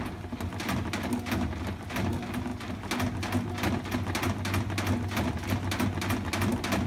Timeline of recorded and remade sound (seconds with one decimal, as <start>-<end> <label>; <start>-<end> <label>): 0.0-6.9 recorded